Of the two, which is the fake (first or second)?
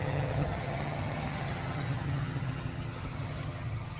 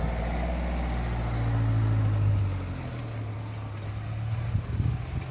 first